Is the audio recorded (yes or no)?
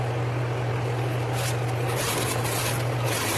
yes